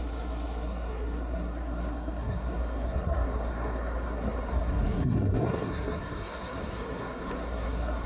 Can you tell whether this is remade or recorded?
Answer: remade